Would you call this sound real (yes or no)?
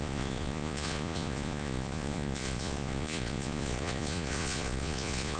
no